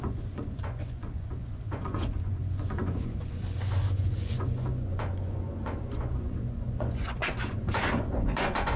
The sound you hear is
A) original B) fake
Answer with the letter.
B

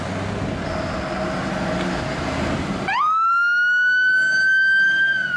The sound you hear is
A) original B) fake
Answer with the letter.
A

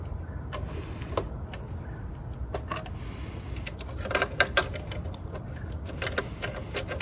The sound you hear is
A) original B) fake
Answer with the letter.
A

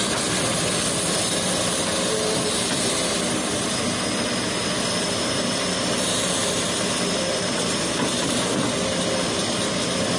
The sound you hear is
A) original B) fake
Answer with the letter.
A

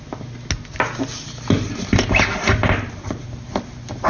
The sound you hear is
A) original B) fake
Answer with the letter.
A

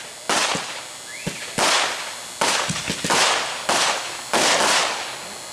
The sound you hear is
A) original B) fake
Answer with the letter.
A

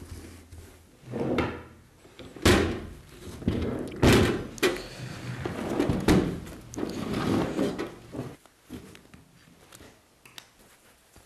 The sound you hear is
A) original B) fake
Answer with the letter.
A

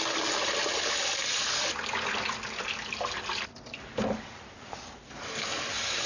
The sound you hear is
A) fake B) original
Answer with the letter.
B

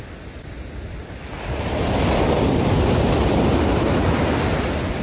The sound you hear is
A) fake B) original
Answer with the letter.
B